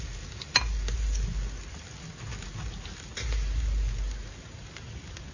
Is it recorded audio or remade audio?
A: recorded